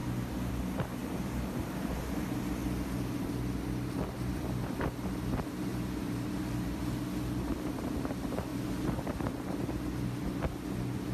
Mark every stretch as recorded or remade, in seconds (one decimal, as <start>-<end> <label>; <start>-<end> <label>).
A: 0.0-1.0 recorded; 1.0-2.0 remade; 2.0-5.7 recorded; 5.7-6.8 remade; 6.8-11.1 recorded